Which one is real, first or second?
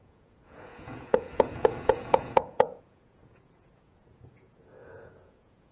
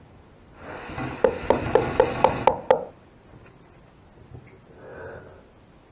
second